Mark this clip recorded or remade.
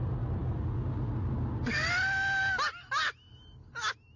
recorded